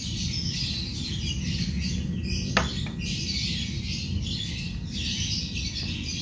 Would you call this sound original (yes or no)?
yes